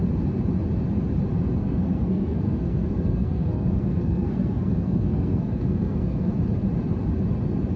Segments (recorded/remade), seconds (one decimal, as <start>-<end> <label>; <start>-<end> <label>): 0.0-1.6 recorded; 1.6-6.3 remade; 6.3-7.8 recorded